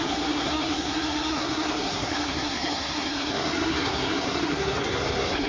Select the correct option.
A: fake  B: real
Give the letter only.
A